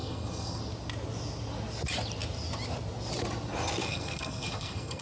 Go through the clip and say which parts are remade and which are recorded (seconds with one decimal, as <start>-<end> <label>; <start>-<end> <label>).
0.0-0.6 remade; 0.6-3.8 recorded; 3.8-5.0 remade